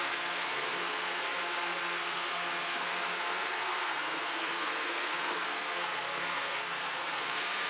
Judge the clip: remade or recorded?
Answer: remade